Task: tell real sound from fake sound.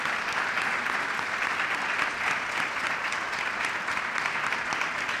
real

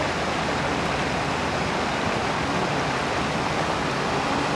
real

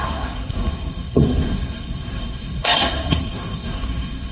fake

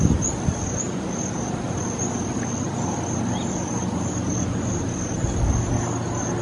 real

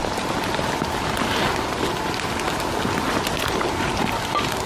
real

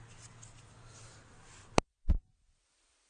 real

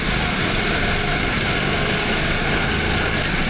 real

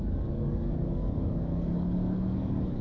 fake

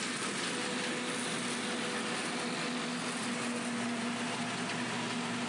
real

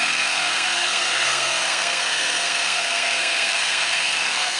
fake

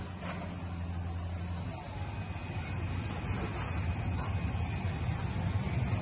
real